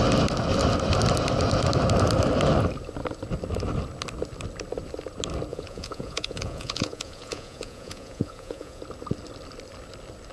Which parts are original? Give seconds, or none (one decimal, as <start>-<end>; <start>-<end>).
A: 0.0-5.5; 8.8-10.3